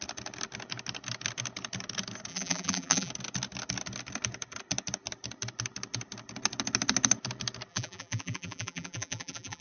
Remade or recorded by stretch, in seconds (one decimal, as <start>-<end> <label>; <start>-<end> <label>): 0.0-2.3 recorded; 2.3-3.1 remade; 3.1-7.7 recorded; 7.7-9.6 remade